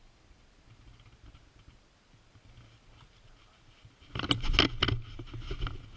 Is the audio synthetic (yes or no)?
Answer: no